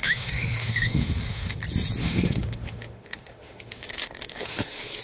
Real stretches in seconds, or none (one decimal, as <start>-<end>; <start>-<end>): 1.6-2.0